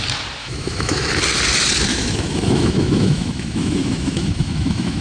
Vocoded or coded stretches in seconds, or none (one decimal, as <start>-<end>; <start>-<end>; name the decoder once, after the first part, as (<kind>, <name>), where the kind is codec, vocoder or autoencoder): 0.4-1.1 (autoencoder, DAC-VAE); 1.9-5.0